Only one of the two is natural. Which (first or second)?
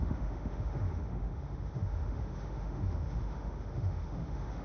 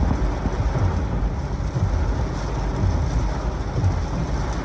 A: second